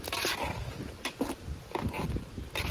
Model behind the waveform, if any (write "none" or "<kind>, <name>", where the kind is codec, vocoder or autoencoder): none